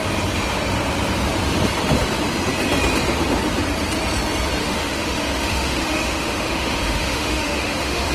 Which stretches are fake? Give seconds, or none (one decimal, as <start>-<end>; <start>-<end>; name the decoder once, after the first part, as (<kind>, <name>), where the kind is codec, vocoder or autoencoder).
4.6-8.1 (autoencoder, DAC-VAE)